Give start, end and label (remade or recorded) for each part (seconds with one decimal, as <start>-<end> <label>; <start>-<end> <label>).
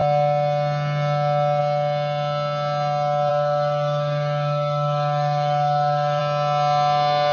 0.0-3.3 recorded; 3.3-6.2 remade; 6.2-7.3 recorded